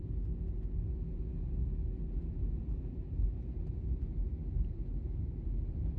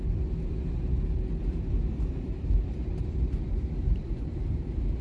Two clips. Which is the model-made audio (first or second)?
second